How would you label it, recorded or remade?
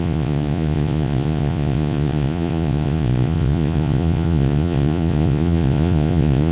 remade